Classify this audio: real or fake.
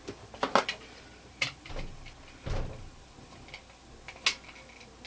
real